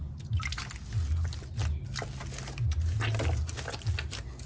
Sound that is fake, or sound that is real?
real